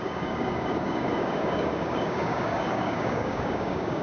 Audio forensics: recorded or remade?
remade